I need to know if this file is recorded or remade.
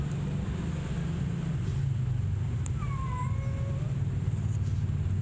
recorded